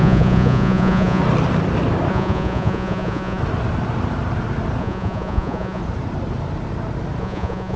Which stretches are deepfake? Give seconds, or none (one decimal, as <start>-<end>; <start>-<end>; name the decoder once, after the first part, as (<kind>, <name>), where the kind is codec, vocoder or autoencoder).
0.0-1.2 (vocoder, Vocos); 2.1-3.4; 4.8-5.8; 7.2-7.8